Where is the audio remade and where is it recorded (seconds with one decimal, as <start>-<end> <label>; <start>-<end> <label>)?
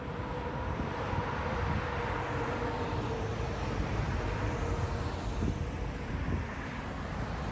0.0-3.3 recorded; 3.3-4.7 remade; 4.7-7.5 recorded